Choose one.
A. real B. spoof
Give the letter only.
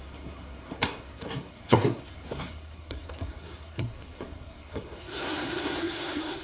B